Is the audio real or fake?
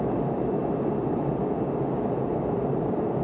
real